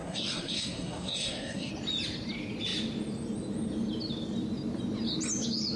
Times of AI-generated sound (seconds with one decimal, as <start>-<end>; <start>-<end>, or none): 0.0-1.7